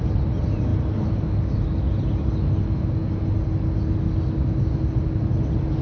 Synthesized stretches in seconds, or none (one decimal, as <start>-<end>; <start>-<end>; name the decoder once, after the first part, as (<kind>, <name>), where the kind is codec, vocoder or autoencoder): none